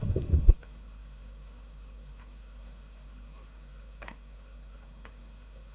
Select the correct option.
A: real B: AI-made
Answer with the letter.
B